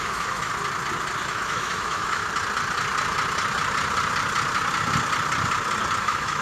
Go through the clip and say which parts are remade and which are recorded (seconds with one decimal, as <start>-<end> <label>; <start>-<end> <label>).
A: 0.0-0.5 remade; 0.5-1.3 recorded; 1.3-2.2 remade; 2.2-6.0 recorded; 6.0-6.4 remade